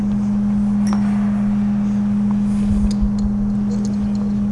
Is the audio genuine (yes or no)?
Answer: yes